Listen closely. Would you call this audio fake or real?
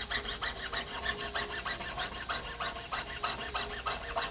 real